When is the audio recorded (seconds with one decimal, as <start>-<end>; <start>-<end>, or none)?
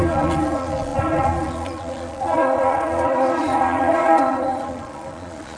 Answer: none